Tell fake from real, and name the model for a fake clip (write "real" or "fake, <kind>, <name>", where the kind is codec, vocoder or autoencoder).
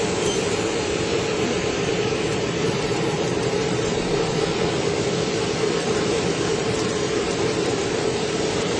fake, vocoder, BigVGAN v2